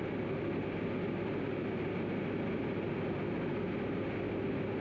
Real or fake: real